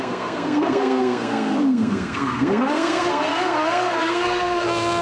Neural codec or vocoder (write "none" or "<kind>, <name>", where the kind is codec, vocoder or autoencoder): codec, SNAC